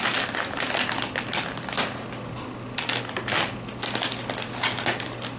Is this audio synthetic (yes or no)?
no